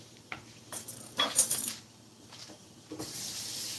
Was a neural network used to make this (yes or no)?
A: yes